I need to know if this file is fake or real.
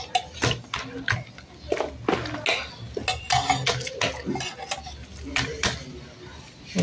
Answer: real